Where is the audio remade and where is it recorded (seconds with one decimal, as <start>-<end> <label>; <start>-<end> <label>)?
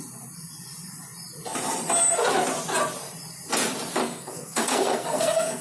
0.0-4.0 recorded; 4.0-5.6 remade